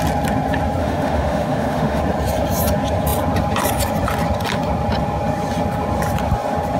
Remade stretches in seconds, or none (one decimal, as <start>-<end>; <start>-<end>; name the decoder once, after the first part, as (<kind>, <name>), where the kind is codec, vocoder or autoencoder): 0.8-2.0 (autoencoder, DAC-VAE)